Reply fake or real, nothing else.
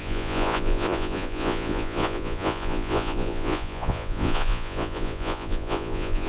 fake